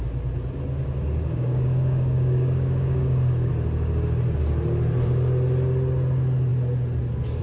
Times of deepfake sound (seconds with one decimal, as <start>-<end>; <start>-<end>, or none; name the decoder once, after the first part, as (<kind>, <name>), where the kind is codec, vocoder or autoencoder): 1.2-3.5 (codec, DAC)